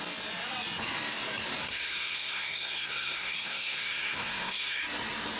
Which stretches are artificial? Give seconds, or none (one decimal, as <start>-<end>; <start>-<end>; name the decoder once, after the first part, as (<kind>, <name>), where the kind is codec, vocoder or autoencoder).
1.6-4.8 (codec, SNAC)